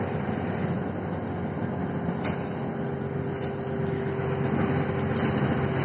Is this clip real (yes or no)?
yes